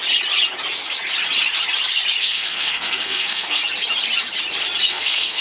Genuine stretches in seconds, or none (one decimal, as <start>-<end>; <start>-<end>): 0.0-2.2; 3.6-4.9